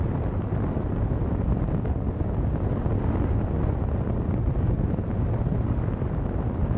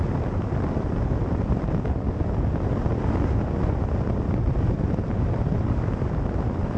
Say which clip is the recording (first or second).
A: first